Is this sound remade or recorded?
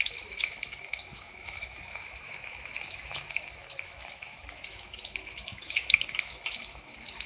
remade